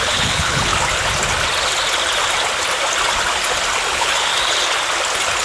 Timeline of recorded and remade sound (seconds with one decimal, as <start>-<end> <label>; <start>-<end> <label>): 0.0-0.7 remade; 0.7-3.9 recorded; 3.9-4.3 remade; 4.3-5.4 recorded